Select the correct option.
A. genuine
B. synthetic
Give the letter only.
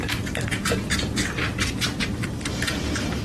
B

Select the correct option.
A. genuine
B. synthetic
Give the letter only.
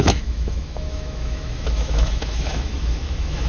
B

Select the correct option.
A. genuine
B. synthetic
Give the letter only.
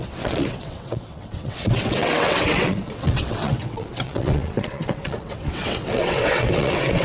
B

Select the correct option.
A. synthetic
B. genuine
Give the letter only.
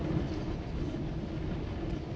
B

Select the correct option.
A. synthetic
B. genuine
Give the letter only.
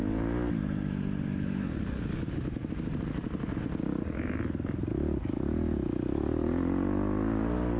B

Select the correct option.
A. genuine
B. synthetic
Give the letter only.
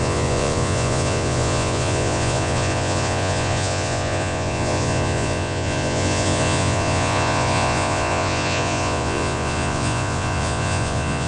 B